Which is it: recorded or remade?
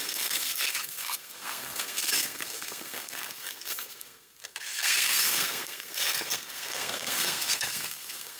remade